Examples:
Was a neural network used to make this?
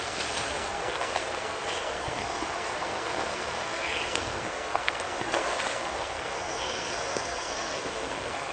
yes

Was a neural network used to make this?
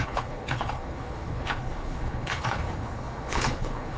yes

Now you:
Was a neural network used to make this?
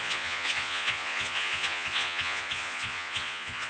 yes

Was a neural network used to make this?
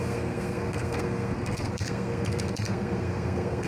yes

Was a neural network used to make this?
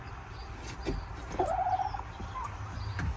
no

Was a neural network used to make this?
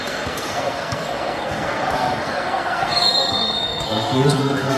yes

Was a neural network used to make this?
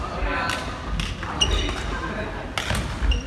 no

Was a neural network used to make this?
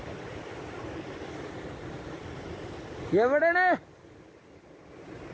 no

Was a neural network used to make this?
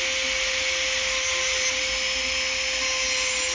no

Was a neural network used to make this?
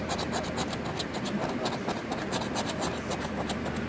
no